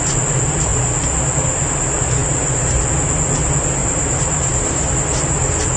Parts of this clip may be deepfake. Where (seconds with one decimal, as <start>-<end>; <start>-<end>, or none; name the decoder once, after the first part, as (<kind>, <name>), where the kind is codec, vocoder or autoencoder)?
2.2-2.8 (vocoder, BigVGAN v2); 3.8-4.9